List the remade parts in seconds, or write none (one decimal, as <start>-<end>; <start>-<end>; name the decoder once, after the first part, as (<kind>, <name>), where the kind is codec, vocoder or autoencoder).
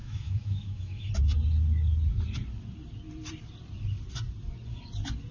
0.0-1.1 (autoencoder, DAC-VAE)